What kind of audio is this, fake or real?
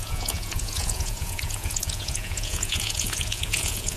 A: fake